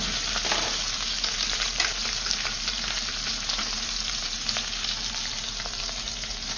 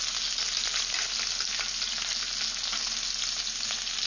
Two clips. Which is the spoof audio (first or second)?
first